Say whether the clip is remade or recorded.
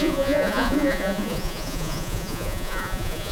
remade